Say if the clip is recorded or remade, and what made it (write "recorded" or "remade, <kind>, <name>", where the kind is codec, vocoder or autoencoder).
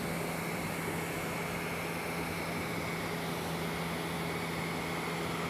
recorded